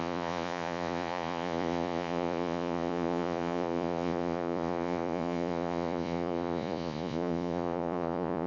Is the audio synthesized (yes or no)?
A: yes